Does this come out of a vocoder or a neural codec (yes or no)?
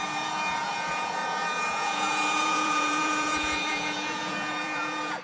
yes